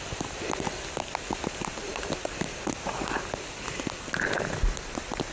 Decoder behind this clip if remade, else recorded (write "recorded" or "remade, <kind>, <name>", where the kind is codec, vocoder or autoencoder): recorded